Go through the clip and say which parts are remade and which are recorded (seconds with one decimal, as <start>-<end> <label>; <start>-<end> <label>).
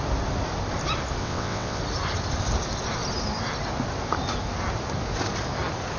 0.0-1.2 recorded; 1.2-1.8 remade; 1.8-6.0 recorded